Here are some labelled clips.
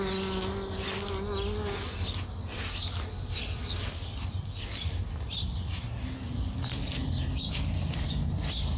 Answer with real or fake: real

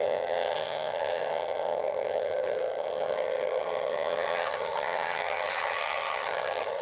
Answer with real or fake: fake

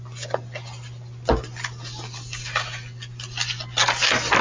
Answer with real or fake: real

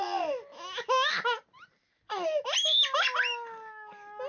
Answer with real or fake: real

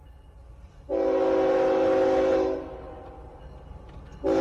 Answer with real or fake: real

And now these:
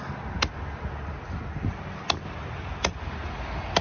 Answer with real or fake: real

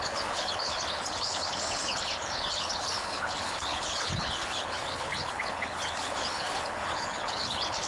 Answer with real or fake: fake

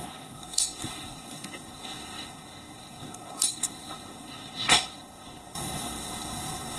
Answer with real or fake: fake